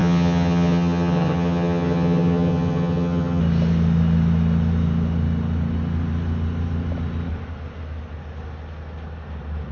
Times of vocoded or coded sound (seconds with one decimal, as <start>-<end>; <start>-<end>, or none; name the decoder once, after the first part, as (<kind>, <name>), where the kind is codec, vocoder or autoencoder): 0.0-3.4 (vocoder, HiFi-GAN)